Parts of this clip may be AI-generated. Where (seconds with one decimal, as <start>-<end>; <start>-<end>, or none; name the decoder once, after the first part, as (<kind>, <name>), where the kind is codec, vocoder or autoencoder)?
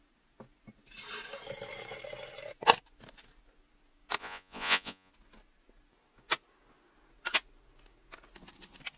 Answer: 4.2-5.1 (vocoder, Vocos)